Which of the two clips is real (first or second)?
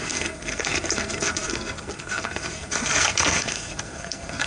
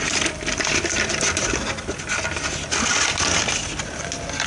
second